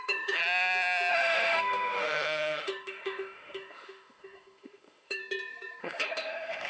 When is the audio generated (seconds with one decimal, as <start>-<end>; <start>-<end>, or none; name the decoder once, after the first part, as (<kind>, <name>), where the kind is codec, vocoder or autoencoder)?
0.0-0.4 (autoencoder, DAC-VAE); 1.1-5.2; 5.8-6.7